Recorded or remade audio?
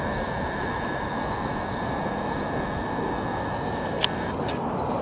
recorded